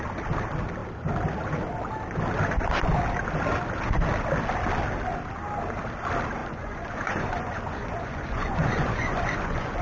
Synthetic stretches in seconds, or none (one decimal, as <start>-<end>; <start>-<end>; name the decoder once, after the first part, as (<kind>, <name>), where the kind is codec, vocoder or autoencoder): 6.4-9.8 (vocoder, Vocos)

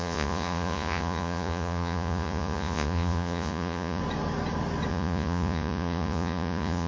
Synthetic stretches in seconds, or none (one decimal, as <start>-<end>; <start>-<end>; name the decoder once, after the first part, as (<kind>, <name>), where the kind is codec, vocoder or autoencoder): 0.0-4.0 (vocoder, Vocos); 4.9-6.9

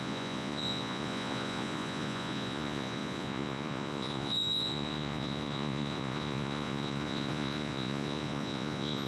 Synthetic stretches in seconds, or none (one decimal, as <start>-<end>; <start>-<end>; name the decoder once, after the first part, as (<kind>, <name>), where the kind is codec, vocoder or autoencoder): 0.0-9.1 (vocoder, Vocos)

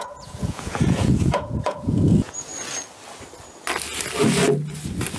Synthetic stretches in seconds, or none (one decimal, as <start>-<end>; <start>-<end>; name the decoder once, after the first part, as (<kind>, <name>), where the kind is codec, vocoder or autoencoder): 0.0-2.5 (vocoder, Vocos)

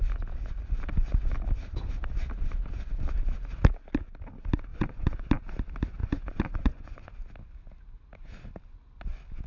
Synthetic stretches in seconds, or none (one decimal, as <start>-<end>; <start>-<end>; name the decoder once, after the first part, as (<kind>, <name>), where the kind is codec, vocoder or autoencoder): 4.7-5.2 (vocoder, Vocos); 6.0-7.1

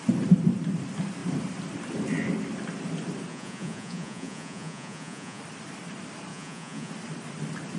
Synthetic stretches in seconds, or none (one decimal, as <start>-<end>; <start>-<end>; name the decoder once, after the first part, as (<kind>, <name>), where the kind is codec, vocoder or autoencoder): 3.3-5.4 (vocoder, Vocos); 6.3-6.9

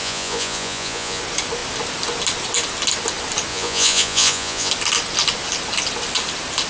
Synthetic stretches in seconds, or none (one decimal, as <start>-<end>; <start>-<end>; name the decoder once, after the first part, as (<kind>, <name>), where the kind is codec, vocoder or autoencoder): 0.0-1.2 (vocoder, Vocos); 3.5-4.7

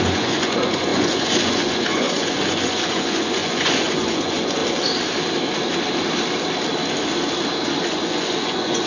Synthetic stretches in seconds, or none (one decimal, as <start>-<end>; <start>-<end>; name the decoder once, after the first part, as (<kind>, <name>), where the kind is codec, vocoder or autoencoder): 0.0-4.6 (vocoder, Vocos); 7.9-8.9